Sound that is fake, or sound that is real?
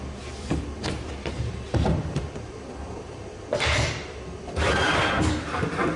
fake